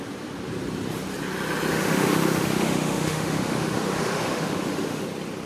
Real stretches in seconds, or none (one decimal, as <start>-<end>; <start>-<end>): 0.0-1.7; 5.0-5.5